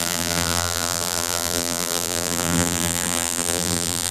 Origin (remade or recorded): remade